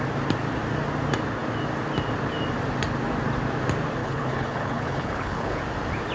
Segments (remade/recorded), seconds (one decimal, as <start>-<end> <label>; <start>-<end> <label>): 0.0-4.0 recorded; 4.0-5.6 remade; 5.6-6.1 recorded